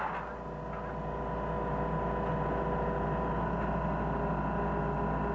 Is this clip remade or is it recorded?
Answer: recorded